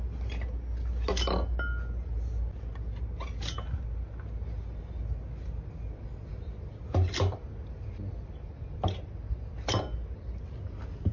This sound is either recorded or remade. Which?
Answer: recorded